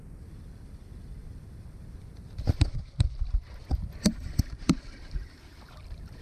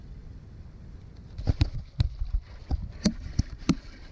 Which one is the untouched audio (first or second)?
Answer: second